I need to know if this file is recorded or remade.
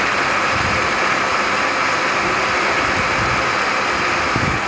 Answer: recorded